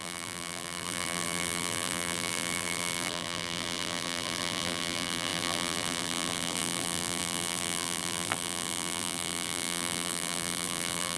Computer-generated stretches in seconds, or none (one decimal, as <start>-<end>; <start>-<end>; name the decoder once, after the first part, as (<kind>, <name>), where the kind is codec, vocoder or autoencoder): 0.0-11.2 (vocoder, BigVGAN v2)